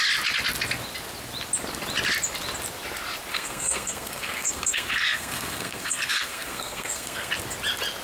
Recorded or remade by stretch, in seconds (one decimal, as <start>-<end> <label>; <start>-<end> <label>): 0.0-3.3 recorded; 3.3-7.3 remade; 7.3-8.0 recorded